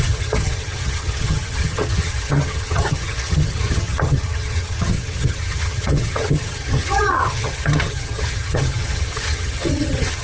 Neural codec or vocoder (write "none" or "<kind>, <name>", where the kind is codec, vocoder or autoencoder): vocoder, HiFi-GAN